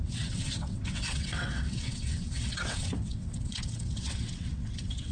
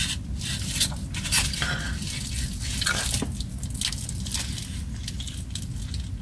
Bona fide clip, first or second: second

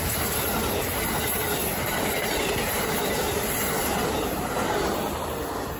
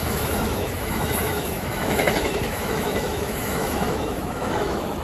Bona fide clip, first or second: first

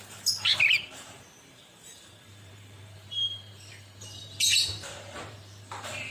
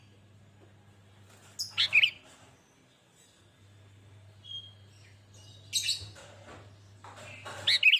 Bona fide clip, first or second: second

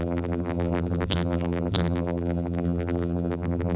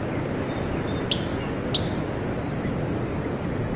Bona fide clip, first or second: second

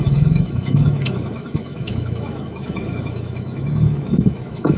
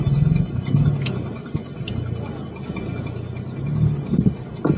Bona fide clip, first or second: second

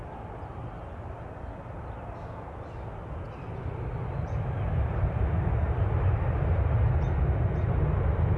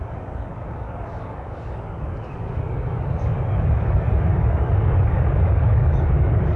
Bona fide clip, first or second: first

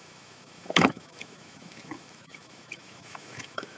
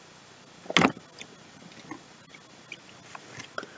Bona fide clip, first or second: second